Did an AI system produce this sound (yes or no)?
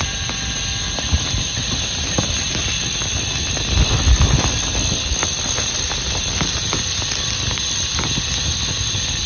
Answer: no